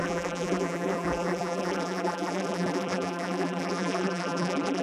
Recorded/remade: remade